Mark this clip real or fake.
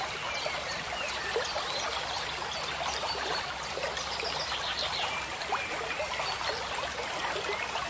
real